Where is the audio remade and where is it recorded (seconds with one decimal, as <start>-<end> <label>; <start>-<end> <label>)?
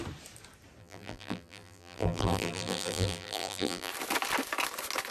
0.0-0.8 recorded; 0.8-3.9 remade; 3.9-5.1 recorded